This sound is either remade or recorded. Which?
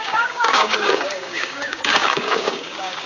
remade